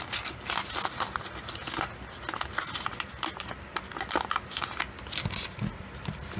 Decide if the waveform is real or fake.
real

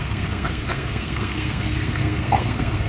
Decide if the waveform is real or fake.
fake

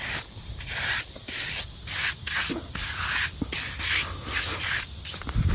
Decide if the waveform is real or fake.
real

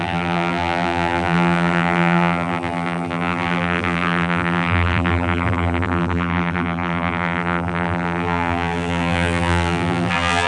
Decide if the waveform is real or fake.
fake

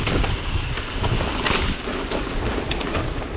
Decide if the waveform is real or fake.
real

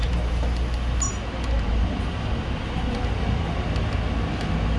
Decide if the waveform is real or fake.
real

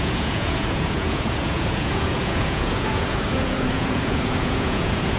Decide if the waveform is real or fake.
fake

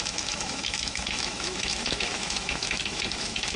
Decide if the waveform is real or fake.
fake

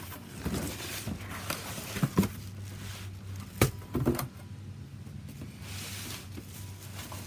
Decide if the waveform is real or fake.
real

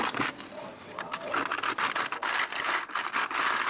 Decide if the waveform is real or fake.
real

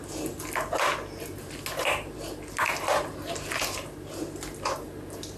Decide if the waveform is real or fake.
real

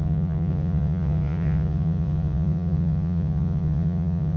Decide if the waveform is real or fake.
fake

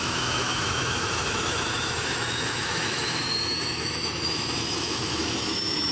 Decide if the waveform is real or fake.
fake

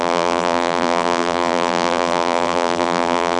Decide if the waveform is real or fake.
fake